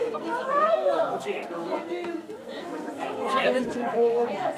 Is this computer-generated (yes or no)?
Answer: yes